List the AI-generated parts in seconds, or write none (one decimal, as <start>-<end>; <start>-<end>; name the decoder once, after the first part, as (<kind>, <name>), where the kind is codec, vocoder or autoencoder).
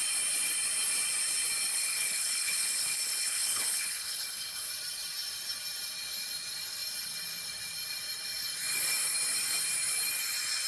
1.7-4.7 (codec, HILCodec)